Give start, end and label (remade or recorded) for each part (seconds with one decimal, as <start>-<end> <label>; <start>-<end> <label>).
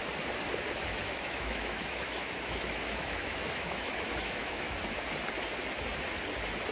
0.0-0.8 recorded; 0.8-4.7 remade; 4.7-6.7 recorded